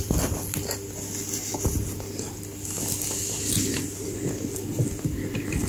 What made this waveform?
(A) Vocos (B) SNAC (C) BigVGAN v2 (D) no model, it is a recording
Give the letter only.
D